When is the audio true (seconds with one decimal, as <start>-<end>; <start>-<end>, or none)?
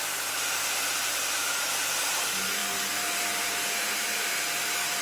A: none